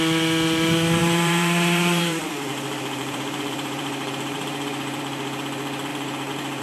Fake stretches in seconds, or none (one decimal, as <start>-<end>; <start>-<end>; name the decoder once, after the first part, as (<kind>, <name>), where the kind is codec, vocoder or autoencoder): 1.0-5.0 (vocoder, BigVGAN v2); 5.9-6.6